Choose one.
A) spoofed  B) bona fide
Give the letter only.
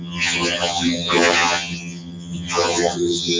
A